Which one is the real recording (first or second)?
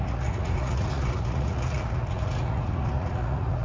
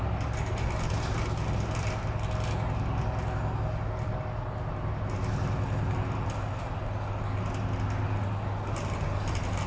second